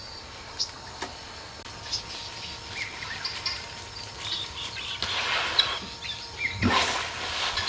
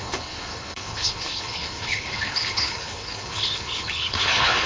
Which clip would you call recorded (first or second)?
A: first